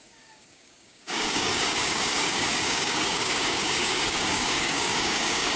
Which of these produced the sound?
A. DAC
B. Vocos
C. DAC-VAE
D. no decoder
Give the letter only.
A